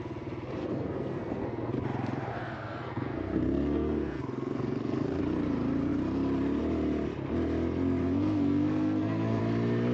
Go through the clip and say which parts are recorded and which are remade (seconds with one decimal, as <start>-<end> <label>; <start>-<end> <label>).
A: 0.0-0.6 recorded; 0.6-1.7 remade; 1.7-2.3 recorded; 2.3-5.2 remade; 5.2-8.0 recorded; 8.0-9.4 remade; 9.4-9.9 recorded